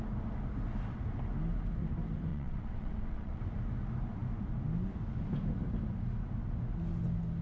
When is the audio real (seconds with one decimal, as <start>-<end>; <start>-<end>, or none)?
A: 0.0-2.3; 3.4-7.4